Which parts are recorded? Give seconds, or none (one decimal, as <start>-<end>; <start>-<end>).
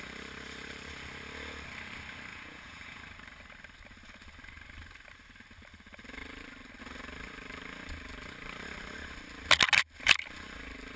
0.0-2.3; 3.0-11.0